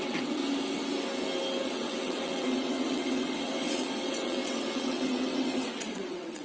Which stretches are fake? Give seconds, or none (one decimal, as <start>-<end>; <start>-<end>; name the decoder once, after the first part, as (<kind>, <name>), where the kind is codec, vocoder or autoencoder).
0.0-0.4 (vocoder, WaveNeXt); 1.6-6.4